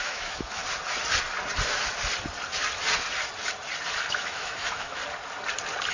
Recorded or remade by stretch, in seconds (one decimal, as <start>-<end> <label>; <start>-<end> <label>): 0.0-0.6 remade; 0.6-4.1 recorded; 4.1-5.0 remade; 5.0-5.9 recorded